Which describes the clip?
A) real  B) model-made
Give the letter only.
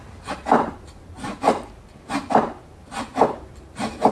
B